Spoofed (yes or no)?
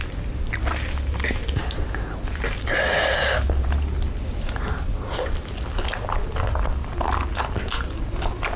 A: no